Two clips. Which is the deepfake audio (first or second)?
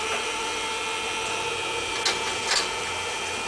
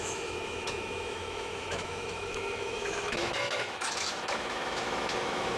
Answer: second